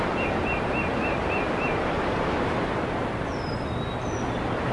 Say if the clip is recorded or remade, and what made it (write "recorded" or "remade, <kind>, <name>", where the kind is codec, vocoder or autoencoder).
recorded